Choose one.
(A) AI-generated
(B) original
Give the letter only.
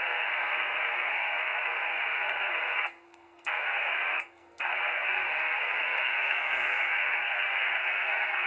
A